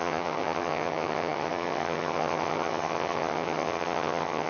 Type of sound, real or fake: fake